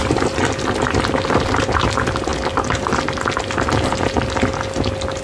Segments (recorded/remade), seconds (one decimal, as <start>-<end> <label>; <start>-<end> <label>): 0.0-0.9 remade; 0.9-5.2 recorded